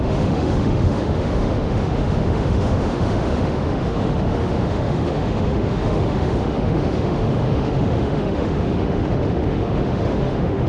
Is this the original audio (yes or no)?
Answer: no